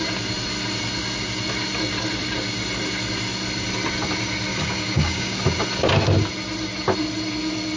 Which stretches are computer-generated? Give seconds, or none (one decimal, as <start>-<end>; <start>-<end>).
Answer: 4.5-5.4